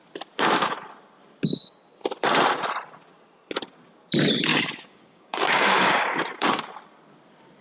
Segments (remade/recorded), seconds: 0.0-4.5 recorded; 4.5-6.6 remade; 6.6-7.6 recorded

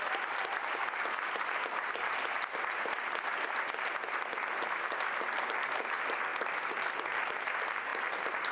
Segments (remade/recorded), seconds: 0.0-8.5 recorded

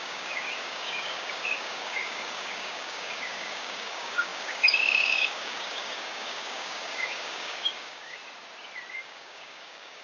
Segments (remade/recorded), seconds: 0.0-8.2 remade; 8.2-8.9 recorded; 8.9-10.0 remade

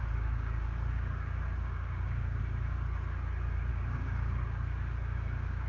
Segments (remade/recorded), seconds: 0.0-2.4 remade; 2.4-3.7 recorded; 3.7-5.7 remade

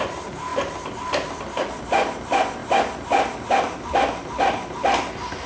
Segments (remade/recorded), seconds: 0.0-5.5 recorded

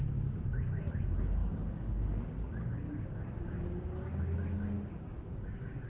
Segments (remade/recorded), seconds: 0.0-5.9 remade

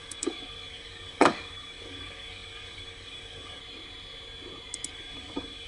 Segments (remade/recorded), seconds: 0.0-3.6 remade; 3.6-4.9 recorded; 4.9-5.7 remade